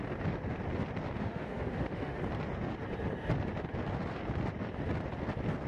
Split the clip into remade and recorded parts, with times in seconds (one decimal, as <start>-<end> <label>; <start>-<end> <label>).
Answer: 0.0-1.2 recorded; 1.2-2.2 remade; 2.2-5.7 recorded